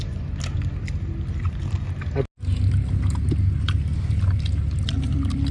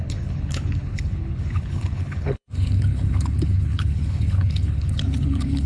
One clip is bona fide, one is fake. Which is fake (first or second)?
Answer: second